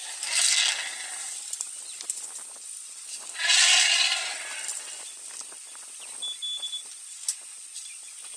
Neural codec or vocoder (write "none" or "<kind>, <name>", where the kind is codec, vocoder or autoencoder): none